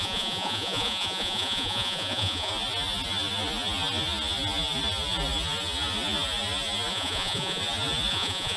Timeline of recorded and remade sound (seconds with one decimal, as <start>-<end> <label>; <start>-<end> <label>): 0.0-2.5 remade; 2.5-6.9 recorded; 6.9-7.6 remade; 7.6-8.1 recorded; 8.1-8.6 remade